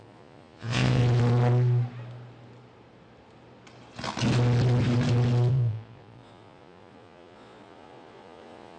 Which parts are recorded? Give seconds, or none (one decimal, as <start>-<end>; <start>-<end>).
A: 1.0-5.5